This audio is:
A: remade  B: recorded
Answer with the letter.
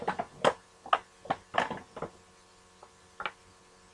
B